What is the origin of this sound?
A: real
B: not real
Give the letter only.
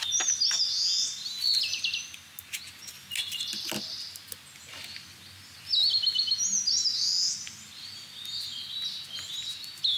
A